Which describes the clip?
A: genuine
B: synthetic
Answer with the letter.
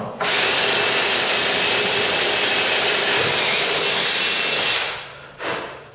A